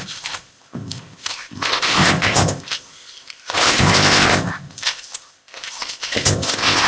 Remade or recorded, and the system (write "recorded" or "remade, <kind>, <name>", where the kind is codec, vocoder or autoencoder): remade, codec, ZipCodec